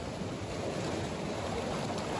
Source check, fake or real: real